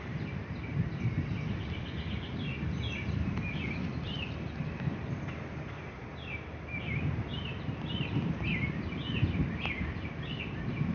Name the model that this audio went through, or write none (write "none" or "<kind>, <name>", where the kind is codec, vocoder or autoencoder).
none